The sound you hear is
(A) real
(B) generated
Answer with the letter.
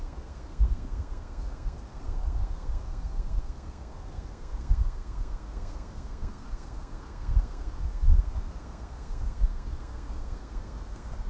B